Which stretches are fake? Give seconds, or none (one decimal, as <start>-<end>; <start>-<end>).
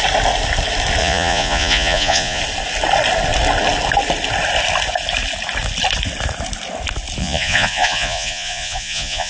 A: 1.0-2.4; 7.2-9.3